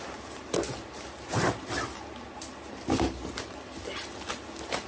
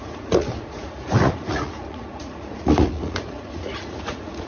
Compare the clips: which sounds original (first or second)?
first